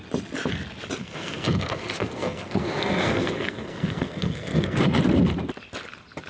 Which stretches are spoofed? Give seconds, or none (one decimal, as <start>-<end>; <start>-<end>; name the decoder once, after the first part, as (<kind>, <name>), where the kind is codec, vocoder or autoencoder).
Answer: 1.0-4.8 (codec, SNAC)